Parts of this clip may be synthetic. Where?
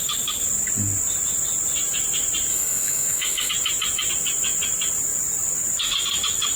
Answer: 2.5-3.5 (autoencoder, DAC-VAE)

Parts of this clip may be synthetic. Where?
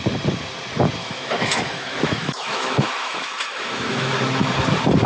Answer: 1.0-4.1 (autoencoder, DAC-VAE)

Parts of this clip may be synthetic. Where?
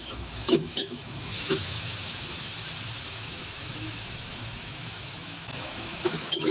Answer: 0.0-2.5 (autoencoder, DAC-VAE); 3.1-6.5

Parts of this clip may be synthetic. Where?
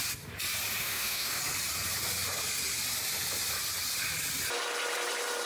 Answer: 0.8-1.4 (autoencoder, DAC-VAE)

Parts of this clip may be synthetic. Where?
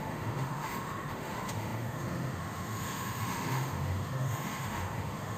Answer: 0.0-5.4 (autoencoder, DAC-VAE)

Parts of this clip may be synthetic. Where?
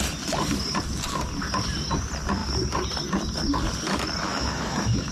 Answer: 4.3-5.1 (autoencoder, DAC-VAE)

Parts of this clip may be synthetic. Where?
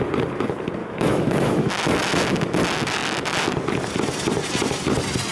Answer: 0.8-1.7 (autoencoder, DAC-VAE)